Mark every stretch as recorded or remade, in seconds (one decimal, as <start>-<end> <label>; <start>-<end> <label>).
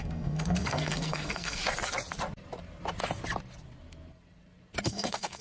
0.0-1.6 remade; 1.6-4.8 recorded; 4.8-5.4 remade